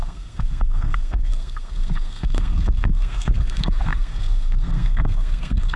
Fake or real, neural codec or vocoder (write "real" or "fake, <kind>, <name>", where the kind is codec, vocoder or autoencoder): fake, codec, SNAC